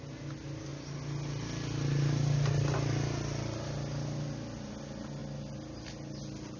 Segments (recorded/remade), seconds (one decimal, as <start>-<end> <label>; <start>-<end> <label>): 0.0-6.6 recorded